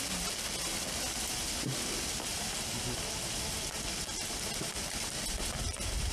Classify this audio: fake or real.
real